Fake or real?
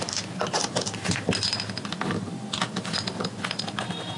real